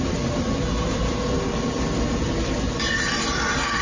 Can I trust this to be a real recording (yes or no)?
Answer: yes